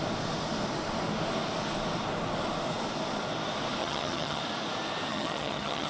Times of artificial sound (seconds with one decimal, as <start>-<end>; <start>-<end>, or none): 3.8-4.4; 5.1-5.9